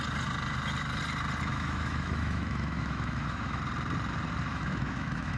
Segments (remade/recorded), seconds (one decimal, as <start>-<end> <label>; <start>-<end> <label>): 0.0-1.5 recorded; 1.5-3.6 remade; 3.6-4.5 recorded; 4.5-5.4 remade